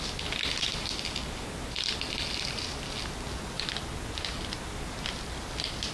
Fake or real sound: real